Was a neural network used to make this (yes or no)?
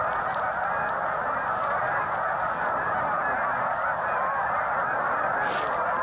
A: no